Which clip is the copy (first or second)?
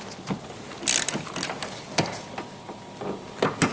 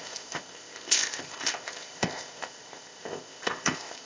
second